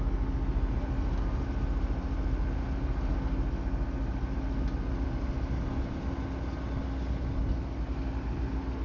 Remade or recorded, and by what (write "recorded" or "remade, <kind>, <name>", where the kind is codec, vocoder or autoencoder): recorded